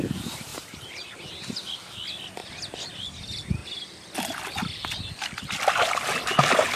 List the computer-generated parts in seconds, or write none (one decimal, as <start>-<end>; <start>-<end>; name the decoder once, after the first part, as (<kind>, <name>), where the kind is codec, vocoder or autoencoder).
0.5-1.3 (vocoder, BigVGAN v2); 2.4-3.0